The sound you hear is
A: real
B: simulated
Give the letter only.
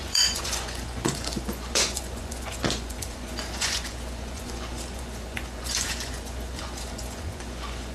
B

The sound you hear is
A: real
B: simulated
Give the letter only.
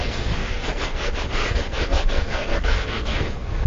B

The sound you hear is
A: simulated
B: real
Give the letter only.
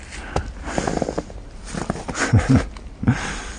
B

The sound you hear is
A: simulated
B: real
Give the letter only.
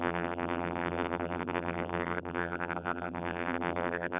A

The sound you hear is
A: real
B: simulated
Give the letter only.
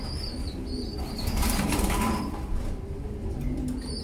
A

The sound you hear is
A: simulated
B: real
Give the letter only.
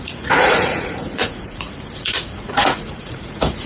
A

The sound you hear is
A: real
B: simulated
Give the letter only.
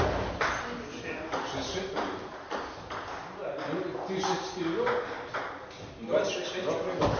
A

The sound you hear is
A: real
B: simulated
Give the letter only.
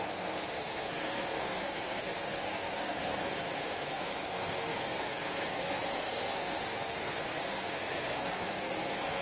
B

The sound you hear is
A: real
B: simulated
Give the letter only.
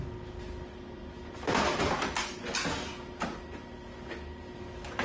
A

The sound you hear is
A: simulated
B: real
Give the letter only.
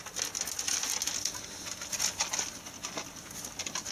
B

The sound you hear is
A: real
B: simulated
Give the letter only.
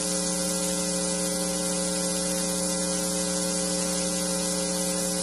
A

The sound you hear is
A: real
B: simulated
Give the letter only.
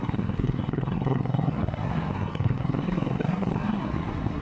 B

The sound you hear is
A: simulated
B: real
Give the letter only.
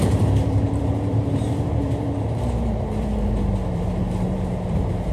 A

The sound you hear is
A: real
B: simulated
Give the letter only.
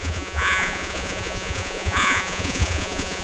B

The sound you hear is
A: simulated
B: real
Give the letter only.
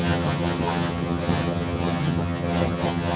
A